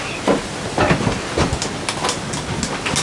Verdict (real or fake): real